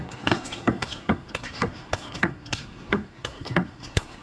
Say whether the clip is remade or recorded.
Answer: remade